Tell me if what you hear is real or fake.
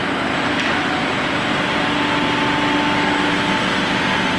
real